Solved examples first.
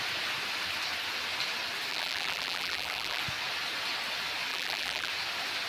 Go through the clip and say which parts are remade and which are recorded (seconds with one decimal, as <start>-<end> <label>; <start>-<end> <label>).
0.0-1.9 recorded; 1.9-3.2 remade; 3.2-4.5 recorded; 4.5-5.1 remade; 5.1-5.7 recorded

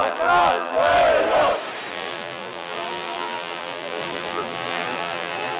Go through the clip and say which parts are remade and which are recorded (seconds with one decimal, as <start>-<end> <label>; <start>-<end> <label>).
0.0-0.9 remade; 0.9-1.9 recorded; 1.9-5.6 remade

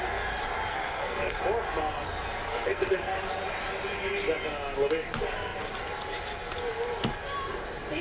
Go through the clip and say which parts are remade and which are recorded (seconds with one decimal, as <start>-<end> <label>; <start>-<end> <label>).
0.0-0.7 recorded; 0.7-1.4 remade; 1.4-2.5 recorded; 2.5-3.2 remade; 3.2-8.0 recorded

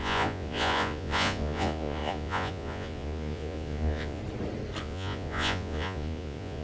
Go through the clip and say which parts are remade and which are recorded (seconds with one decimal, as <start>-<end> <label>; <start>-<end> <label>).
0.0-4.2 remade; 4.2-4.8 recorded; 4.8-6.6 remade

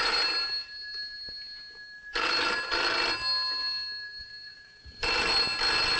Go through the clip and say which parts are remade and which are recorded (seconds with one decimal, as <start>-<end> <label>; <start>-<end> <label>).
0.0-4.2 recorded; 4.2-5.3 remade; 5.3-6.0 recorded